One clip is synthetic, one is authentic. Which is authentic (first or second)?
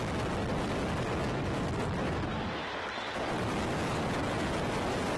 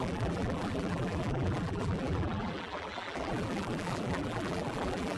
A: first